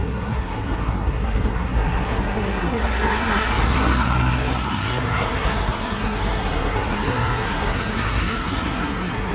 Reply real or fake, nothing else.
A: fake